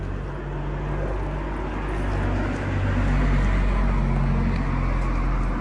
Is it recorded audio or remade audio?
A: recorded